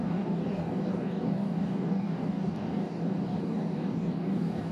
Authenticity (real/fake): fake